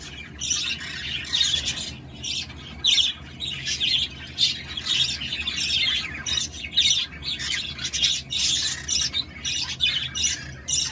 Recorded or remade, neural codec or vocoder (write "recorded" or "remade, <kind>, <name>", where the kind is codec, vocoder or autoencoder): recorded